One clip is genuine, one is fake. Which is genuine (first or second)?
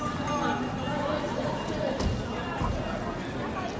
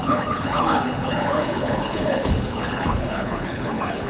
first